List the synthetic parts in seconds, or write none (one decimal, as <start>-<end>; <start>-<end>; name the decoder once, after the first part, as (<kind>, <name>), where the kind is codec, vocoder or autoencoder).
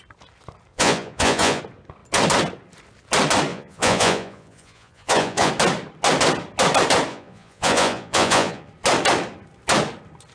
0.7-1.6 (vocoder, Vocos); 3.5-5.5; 7.1-8.7